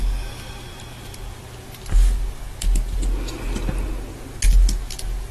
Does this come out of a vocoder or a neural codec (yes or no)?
no